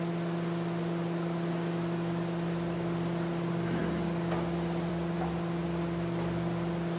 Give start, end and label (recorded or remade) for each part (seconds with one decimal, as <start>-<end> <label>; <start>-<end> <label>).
0.0-7.0 recorded